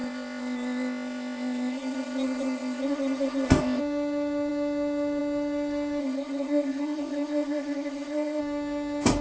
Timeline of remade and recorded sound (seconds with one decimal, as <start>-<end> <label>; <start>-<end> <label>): 0.0-3.8 remade; 3.8-6.0 recorded; 6.0-8.4 remade; 8.4-9.2 recorded